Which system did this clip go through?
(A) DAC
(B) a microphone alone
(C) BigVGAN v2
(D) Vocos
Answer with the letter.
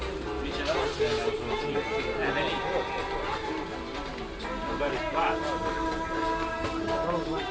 B